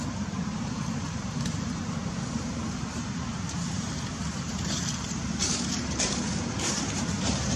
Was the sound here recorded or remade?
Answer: remade